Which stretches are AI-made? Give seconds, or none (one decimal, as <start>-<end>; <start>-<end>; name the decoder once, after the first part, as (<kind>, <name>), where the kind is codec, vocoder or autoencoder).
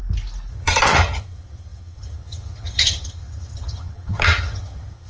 0.5-5.1 (vocoder, HiFi-GAN)